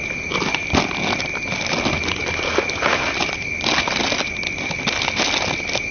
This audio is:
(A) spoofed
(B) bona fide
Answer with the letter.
B